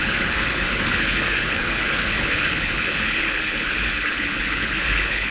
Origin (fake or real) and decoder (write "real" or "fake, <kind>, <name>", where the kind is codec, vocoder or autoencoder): fake, codec, HILCodec